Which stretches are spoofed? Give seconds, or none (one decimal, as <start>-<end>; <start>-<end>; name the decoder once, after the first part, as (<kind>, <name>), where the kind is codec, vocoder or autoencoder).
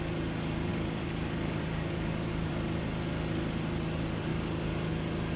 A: 0.7-2.5 (codec, DAC); 4.3-4.9